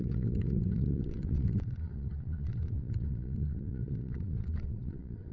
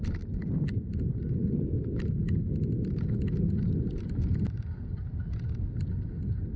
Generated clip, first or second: first